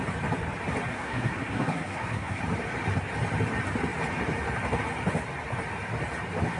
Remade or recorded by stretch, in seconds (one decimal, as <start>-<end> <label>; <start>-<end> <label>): 0.0-0.9 recorded; 0.9-2.4 remade; 2.4-6.6 recorded